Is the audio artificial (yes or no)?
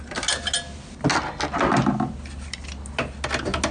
no